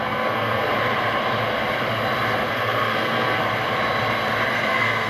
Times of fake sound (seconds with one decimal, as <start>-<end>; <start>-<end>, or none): 0.0-0.7; 2.5-3.4; 4.5-5.1